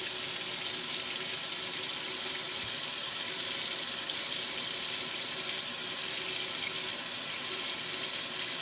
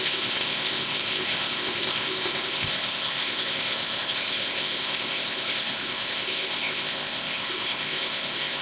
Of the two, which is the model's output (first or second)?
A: second